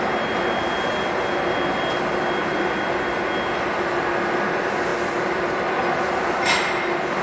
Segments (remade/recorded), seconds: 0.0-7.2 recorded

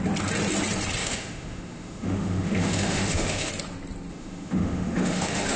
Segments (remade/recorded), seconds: 0.0-1.0 recorded; 1.0-3.5 remade; 3.5-4.1 recorded; 4.1-5.6 remade

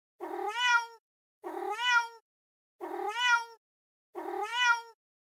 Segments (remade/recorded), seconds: 0.0-0.7 recorded; 0.7-2.7 remade; 2.7-4.5 recorded; 4.5-5.0 remade; 5.0-5.4 recorded

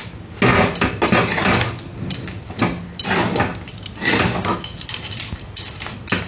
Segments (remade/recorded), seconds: 0.0-6.3 recorded